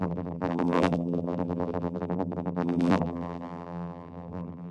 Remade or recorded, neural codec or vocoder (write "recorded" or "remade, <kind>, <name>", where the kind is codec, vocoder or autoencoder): remade, vocoder, BigVGAN v2